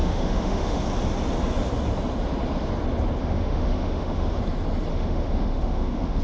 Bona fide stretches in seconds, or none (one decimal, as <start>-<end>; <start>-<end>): 0.8-3.2; 4.4-4.9